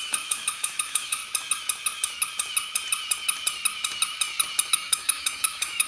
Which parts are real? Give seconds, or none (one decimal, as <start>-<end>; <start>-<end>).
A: 1.2-4.7